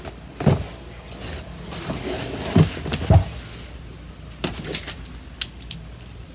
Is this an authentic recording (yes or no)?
yes